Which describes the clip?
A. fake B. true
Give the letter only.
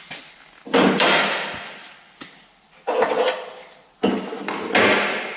B